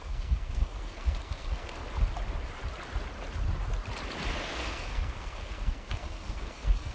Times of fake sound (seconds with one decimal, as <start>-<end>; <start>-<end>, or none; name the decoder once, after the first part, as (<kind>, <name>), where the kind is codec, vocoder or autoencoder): 0.0-1.8 (codec, SNAC); 4.5-6.9